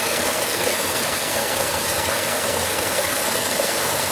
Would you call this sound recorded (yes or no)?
no